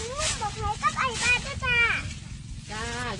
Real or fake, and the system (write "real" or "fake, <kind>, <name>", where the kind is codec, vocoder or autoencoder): real